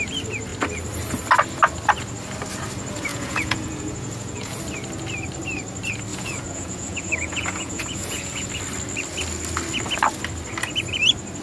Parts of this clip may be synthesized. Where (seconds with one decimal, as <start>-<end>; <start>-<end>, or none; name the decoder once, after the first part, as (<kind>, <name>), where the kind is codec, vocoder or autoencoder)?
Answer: 3.1-4.6 (vocoder, Vocos); 6.1-8.5